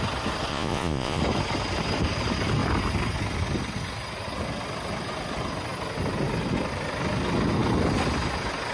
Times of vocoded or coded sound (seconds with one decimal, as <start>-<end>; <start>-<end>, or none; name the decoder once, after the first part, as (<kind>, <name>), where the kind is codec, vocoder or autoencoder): 0.5-1.2 (vocoder, Vocos)